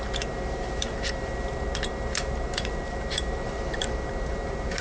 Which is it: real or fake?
fake